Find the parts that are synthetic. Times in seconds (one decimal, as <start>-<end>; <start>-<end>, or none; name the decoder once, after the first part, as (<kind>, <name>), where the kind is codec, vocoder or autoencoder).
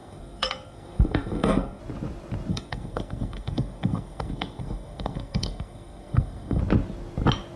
0.0-1.8 (codec, SNAC); 2.5-6.6